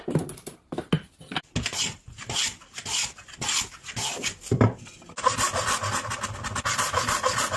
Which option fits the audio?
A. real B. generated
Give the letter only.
A